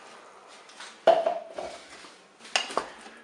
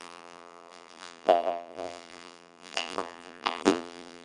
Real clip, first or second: first